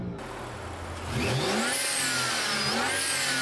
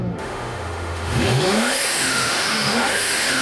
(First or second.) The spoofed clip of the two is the second